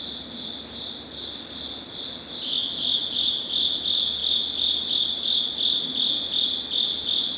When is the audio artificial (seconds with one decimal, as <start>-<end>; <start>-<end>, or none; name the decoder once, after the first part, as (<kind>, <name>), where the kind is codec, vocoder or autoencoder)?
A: none